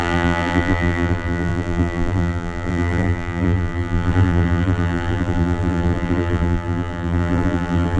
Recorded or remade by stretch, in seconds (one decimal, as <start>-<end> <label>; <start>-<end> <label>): 0.0-8.0 remade